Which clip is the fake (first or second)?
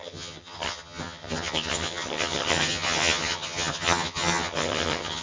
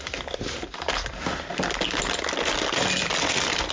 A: first